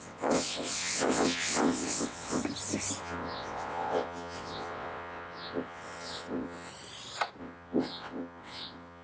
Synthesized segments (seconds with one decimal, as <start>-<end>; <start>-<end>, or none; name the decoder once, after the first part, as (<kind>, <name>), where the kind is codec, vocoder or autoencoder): 0.0-2.4 (vocoder, WaveNeXt); 3.0-6.7; 7.4-9.0